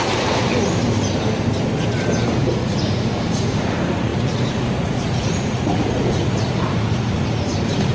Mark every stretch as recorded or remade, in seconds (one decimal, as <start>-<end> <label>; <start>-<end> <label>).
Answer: 0.0-0.5 remade; 0.5-2.3 recorded; 2.3-7.9 remade